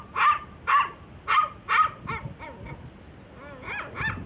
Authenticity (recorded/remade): recorded